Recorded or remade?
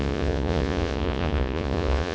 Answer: remade